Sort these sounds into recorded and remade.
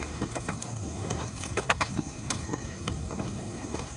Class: remade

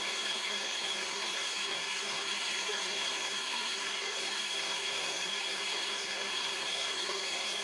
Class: remade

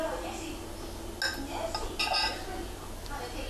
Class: recorded